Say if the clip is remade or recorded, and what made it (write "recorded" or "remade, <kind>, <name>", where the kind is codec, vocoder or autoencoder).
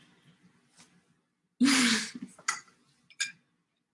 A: recorded